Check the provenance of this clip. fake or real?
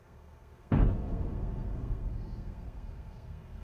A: fake